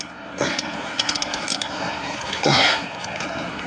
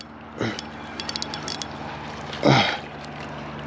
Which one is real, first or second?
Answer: second